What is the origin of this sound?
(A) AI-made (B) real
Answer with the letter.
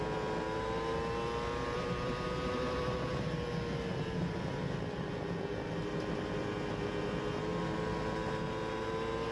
B